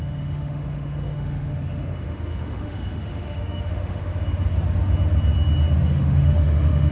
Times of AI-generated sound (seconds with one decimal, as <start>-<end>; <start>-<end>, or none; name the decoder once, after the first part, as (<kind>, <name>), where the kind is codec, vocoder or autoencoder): 0.0-4.1 (autoencoder, DAC-VAE); 5.9-6.9